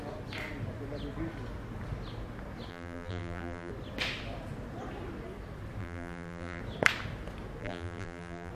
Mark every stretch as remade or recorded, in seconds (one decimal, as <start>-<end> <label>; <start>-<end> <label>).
0.0-2.7 recorded; 2.7-3.7 remade; 3.7-5.8 recorded; 5.8-6.6 remade; 6.6-7.6 recorded; 7.6-8.5 remade